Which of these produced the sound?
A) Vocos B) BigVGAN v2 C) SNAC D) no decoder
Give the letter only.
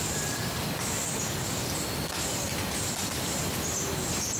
D